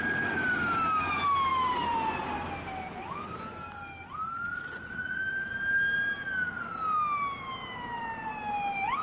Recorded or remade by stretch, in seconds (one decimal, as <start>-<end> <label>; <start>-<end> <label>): 0.0-4.5 recorded; 4.5-5.2 remade; 5.2-9.0 recorded

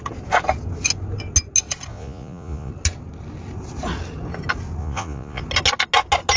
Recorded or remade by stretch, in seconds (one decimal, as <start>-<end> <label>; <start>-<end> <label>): 0.0-1.9 recorded; 1.9-2.7 remade; 2.7-4.8 recorded; 4.8-5.4 remade; 5.4-6.4 recorded

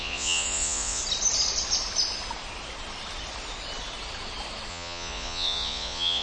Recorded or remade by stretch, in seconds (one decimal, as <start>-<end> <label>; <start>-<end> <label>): 0.0-1.0 remade; 1.0-4.7 recorded; 4.7-6.2 remade

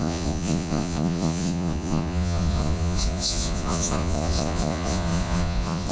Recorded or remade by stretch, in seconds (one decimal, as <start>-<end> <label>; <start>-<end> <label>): 0.0-5.9 remade

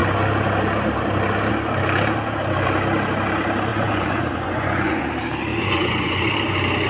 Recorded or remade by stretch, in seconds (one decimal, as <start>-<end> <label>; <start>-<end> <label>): 0.0-3.7 recorded; 3.7-5.1 remade; 5.1-5.5 recorded; 5.5-6.3 remade; 6.3-6.9 recorded

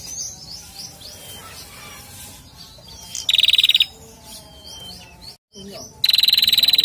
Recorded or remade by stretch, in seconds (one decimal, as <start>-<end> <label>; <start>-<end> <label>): 0.0-6.8 recorded

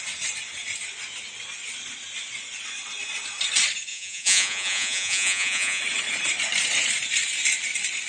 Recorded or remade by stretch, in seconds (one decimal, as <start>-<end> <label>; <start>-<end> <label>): 0.0-3.9 recorded; 3.9-5.8 remade; 5.8-8.1 recorded